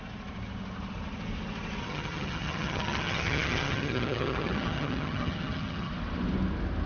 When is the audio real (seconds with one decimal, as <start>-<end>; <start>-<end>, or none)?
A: 0.0-1.8; 5.9-6.9